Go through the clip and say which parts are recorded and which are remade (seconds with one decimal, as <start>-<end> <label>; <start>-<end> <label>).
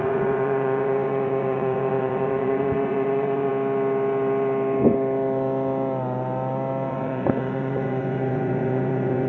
0.0-3.5 remade; 3.5-6.9 recorded; 6.9-9.3 remade